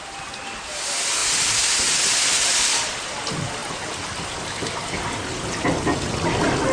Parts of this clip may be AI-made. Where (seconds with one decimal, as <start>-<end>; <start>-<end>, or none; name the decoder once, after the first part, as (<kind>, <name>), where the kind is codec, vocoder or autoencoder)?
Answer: none